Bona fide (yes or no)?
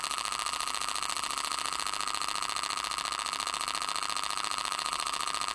no